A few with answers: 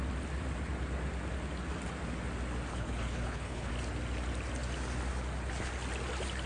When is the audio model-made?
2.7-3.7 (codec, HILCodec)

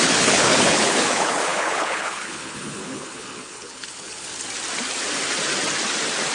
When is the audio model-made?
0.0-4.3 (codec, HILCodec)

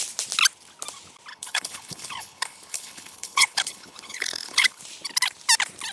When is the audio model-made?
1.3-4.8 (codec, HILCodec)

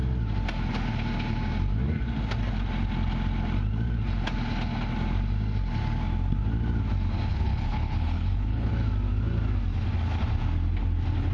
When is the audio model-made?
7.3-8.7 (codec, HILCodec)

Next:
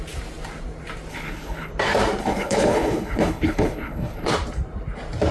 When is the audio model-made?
1.1-1.7 (codec, HILCodec); 2.2-4.3

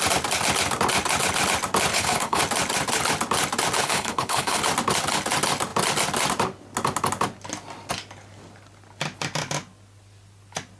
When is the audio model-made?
1.9-2.4 (codec, HILCodec); 3.8-4.6